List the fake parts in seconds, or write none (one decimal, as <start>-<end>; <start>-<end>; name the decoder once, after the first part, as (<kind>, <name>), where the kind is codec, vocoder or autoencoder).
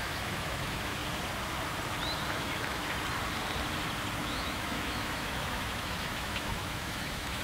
0.0-1.0 (autoencoder, DAC-VAE); 2.3-2.8; 4.2-7.4